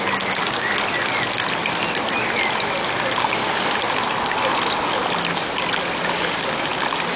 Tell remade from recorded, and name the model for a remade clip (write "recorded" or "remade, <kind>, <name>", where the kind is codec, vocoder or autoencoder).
recorded